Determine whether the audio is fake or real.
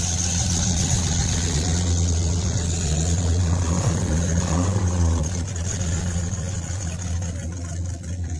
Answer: fake